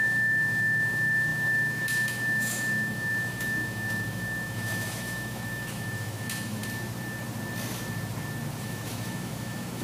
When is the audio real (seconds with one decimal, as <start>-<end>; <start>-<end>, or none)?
6.6-8.6